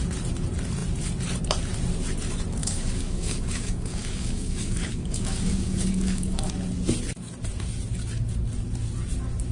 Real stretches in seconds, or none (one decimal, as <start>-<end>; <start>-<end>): 0.0-2.6; 6.5-9.5